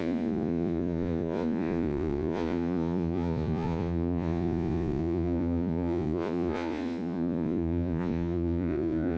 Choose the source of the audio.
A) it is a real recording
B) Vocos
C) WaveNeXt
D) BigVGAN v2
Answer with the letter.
B